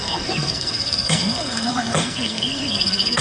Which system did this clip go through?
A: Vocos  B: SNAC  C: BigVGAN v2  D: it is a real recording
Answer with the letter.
B